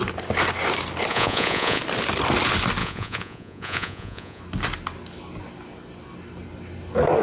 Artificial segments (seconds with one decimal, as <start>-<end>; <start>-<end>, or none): 1.1-1.8; 2.8-4.4